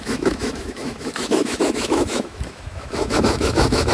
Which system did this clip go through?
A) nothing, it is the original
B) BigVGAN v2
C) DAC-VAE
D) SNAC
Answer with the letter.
C